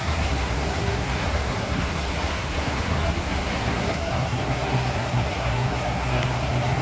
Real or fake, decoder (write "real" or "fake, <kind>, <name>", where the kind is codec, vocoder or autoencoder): fake, codec, SNAC